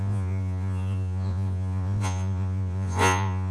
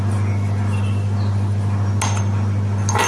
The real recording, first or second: second